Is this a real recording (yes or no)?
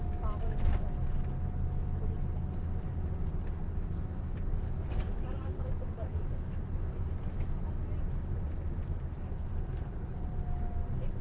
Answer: yes